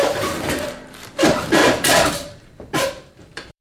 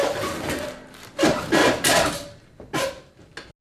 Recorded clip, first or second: second